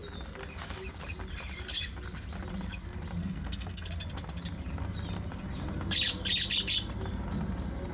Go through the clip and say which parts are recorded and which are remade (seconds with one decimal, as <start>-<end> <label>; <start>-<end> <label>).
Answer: 0.0-3.2 recorded; 3.2-3.9 remade; 3.9-7.9 recorded